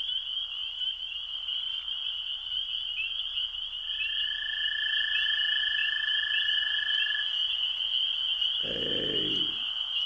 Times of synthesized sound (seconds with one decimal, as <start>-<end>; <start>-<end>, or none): none